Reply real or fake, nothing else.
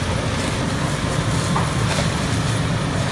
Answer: real